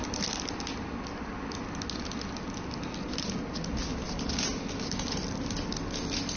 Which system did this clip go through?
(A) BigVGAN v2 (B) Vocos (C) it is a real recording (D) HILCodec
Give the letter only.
C